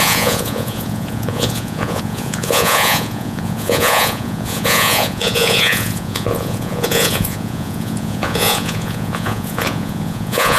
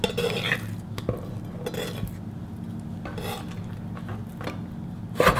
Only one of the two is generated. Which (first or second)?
first